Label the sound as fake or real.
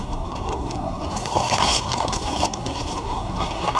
fake